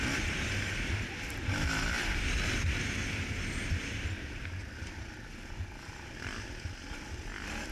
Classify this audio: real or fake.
real